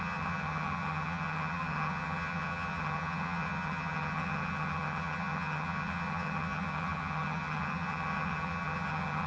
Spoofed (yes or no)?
yes